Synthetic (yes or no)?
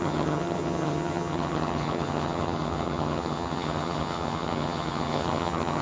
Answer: yes